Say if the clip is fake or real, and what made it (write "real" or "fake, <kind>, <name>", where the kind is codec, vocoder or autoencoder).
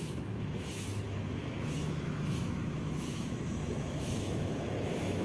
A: fake, autoencoder, DAC-VAE